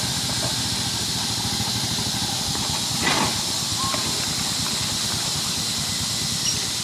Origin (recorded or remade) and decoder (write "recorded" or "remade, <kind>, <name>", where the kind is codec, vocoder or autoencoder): recorded